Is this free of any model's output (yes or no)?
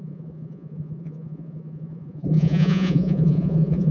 no